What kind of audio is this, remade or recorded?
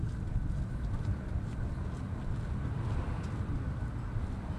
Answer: recorded